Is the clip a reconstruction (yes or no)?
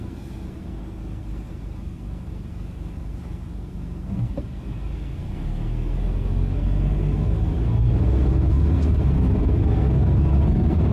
yes